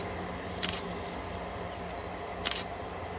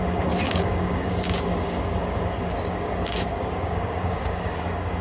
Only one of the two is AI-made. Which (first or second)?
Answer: second